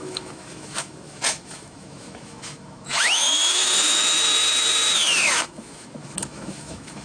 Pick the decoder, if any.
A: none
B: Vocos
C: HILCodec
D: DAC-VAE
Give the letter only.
D